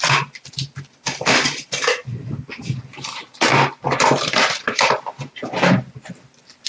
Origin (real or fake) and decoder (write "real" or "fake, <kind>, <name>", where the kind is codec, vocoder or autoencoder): real